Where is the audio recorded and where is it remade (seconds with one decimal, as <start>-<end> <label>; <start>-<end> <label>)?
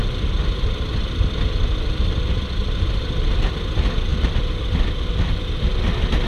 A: 0.0-6.3 recorded